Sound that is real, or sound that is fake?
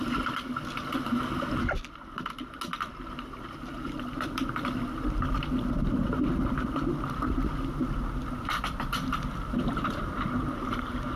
real